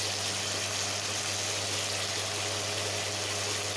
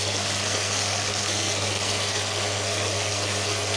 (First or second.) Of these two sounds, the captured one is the first